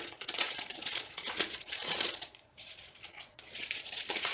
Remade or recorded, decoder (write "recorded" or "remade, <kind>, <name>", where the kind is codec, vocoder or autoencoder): remade, vocoder, Vocos